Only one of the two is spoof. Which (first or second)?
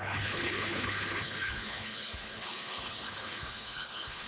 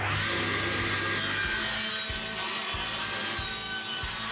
first